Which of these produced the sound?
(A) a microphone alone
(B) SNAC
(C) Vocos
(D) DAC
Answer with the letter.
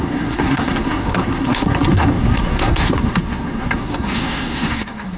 B